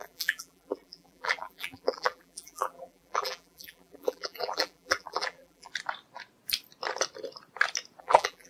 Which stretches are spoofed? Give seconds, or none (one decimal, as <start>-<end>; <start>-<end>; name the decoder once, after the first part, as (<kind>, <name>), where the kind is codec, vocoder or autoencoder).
0.0-5.7 (vocoder, BigVGAN v2); 8.0-8.5